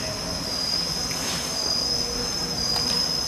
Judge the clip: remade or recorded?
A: recorded